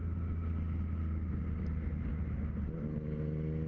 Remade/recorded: recorded